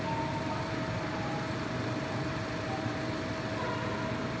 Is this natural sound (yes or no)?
yes